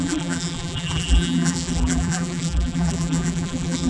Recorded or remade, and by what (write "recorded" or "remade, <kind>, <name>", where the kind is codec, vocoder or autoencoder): remade, vocoder, BigVGAN v2